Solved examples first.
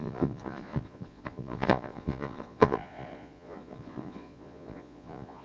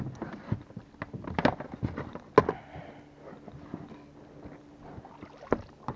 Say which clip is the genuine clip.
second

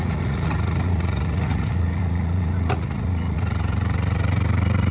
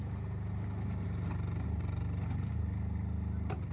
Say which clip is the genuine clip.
second